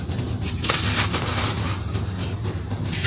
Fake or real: fake